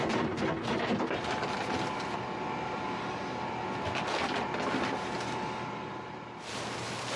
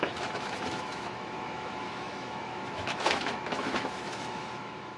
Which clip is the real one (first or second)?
first